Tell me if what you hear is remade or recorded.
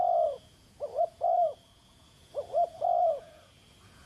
remade